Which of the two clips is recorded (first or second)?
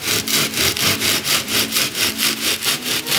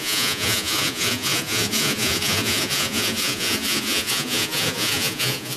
first